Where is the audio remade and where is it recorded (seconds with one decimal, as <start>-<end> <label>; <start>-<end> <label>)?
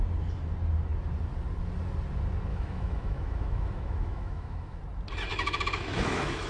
0.0-2.5 recorded; 2.5-4.8 remade; 4.8-5.3 recorded; 5.3-6.5 remade